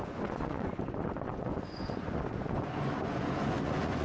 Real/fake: fake